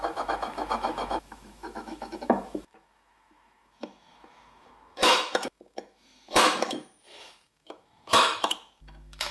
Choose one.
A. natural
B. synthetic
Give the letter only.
B